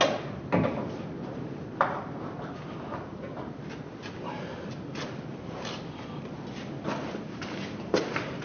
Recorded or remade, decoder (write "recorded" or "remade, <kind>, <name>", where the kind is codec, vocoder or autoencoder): recorded